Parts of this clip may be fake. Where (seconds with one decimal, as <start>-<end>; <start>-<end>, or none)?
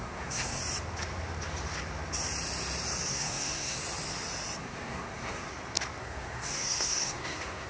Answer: 0.0-0.6; 3.1-3.8; 4.6-5.5; 6.0-7.7